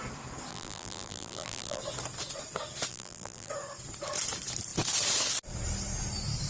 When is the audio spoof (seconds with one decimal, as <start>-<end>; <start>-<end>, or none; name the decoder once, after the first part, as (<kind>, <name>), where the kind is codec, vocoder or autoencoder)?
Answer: 0.5-1.8 (vocoder, BigVGAN v2); 2.9-3.5